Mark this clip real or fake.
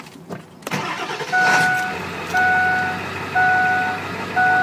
real